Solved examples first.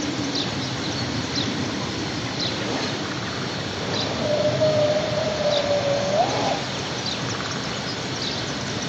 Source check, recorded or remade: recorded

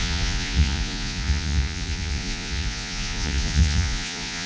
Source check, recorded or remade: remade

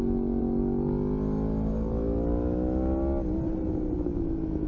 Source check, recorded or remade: recorded